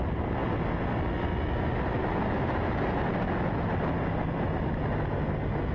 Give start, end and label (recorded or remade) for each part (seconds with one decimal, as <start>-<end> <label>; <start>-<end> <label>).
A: 0.0-5.7 recorded